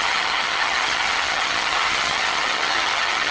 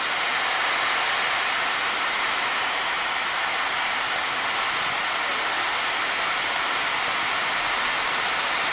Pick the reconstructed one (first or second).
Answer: first